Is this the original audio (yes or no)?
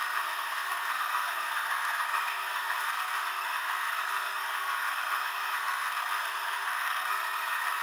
no